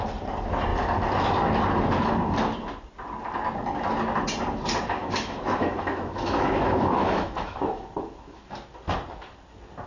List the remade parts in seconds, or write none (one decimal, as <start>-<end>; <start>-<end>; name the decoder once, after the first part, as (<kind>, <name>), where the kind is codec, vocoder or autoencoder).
5.0-8.5 (autoencoder, DAC-VAE)